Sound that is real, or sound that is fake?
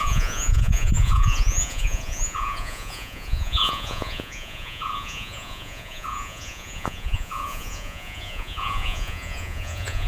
fake